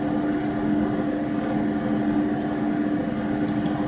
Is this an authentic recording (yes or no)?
yes